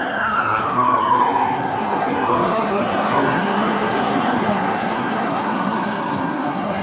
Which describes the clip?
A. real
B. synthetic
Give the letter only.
B